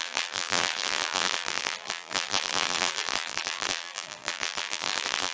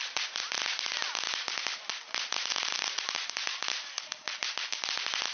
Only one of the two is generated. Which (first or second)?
first